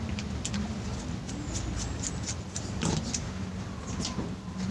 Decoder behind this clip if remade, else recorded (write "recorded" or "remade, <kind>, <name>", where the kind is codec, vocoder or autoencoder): recorded